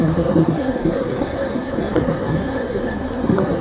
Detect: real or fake fake